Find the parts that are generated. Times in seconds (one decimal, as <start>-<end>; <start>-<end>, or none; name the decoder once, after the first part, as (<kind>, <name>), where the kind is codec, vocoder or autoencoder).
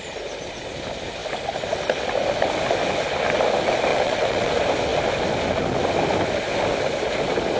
3.9-4.5 (vocoder, WaveNeXt)